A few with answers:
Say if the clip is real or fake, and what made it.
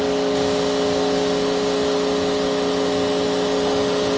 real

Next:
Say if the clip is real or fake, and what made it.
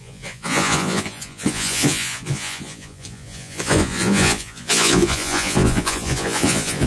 fake, vocoder, Vocos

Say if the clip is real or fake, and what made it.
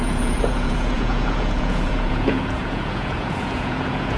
fake, vocoder, Vocos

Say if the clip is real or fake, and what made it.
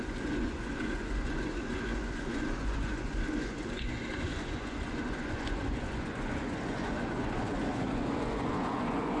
fake, vocoder, Vocos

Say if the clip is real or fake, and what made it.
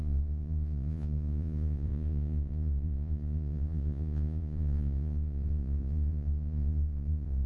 fake, vocoder, Vocos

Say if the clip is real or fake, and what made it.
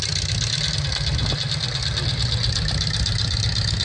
real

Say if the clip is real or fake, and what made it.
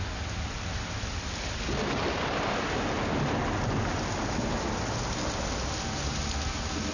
real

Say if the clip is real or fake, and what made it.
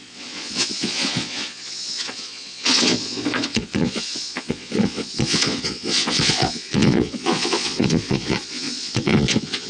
fake, vocoder, Vocos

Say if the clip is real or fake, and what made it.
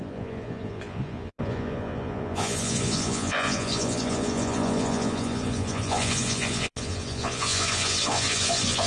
fake, vocoder, Vocos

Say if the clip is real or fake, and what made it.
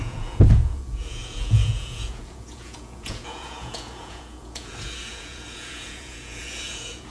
fake, vocoder, Vocos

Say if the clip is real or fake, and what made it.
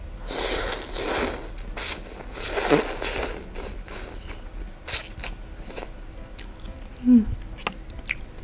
real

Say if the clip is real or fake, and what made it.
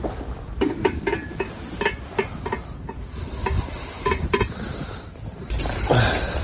real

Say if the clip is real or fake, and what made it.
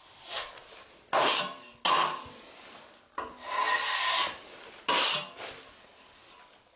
real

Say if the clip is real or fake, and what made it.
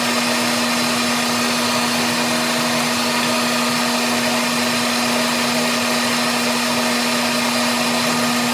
real